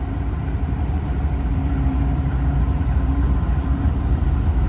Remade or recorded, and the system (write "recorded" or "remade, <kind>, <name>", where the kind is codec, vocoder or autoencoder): remade, vocoder, BigVGAN v2